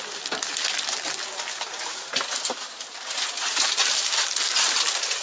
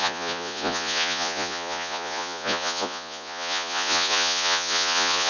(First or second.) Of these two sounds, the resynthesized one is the second